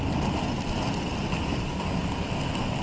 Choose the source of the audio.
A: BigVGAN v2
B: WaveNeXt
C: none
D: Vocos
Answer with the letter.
C